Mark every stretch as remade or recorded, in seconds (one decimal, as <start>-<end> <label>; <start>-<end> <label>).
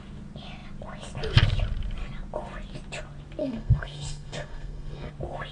0.0-3.4 recorded; 3.4-5.1 remade; 5.1-5.5 recorded